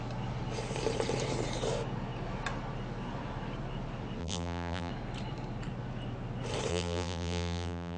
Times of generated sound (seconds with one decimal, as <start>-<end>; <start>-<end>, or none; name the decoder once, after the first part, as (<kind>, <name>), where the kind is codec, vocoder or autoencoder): 4.2-4.9 (vocoder, BigVGAN v2); 6.7-8.0